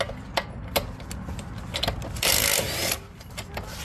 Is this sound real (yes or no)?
yes